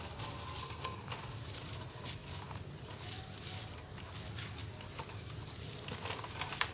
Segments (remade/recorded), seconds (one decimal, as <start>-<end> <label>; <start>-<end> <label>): 0.0-0.6 recorded; 0.6-1.1 remade; 1.1-6.7 recorded